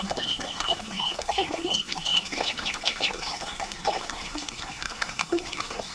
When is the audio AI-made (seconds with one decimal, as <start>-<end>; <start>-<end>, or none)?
0.0-5.9